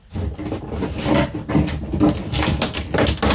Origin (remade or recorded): recorded